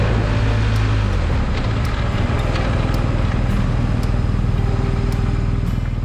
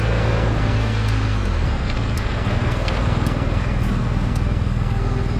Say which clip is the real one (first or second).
first